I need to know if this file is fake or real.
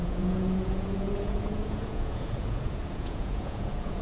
fake